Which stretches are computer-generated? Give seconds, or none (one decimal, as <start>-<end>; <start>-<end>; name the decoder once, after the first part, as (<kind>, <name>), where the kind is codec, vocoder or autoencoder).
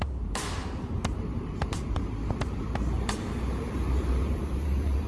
0.0-5.1 (vocoder, BigVGAN v2)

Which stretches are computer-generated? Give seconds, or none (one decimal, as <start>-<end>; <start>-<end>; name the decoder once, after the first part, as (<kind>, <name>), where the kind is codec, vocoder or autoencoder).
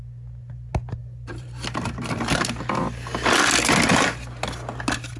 1.0-3.9 (vocoder, BigVGAN v2)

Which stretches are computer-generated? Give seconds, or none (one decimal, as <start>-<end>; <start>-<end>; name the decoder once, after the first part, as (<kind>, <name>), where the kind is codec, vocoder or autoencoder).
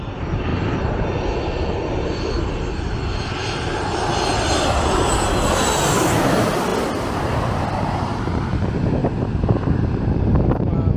9.0-10.1 (vocoder, BigVGAN v2)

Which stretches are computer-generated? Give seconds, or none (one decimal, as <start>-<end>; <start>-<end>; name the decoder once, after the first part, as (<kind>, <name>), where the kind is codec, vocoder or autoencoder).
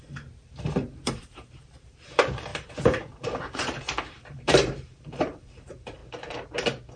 0.0-6.0 (vocoder, BigVGAN v2)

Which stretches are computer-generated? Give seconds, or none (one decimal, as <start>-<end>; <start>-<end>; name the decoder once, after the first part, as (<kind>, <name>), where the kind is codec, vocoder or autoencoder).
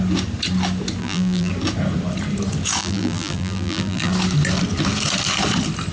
1.0-1.5 (vocoder, BigVGAN v2); 2.8-4.1